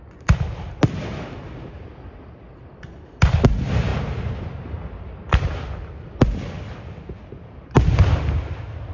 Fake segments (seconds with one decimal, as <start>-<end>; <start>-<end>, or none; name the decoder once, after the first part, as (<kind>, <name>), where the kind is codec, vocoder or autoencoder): none

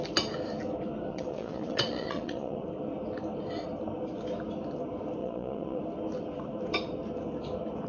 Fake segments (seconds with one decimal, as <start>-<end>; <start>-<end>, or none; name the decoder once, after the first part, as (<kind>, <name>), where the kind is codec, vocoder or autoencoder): 1.1-2.6 (vocoder, Vocos); 5.2-5.8

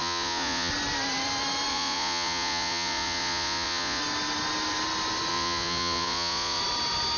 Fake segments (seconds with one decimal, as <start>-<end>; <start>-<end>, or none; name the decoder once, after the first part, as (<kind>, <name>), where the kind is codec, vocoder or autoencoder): 0.0-0.7 (vocoder, Vocos); 1.7-4.0; 5.3-6.6

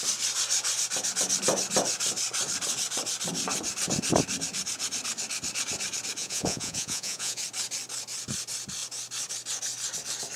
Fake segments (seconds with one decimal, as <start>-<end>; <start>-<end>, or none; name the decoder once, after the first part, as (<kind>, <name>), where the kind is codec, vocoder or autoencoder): 6.2-7.4 (vocoder, Vocos)